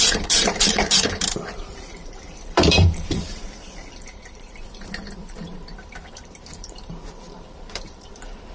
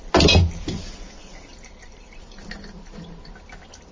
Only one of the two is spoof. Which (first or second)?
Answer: first